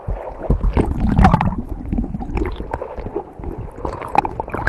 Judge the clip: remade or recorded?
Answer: recorded